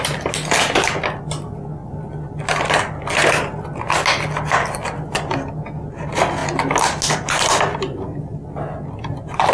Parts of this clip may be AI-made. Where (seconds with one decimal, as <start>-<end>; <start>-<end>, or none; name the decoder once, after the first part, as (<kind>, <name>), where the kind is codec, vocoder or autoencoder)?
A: none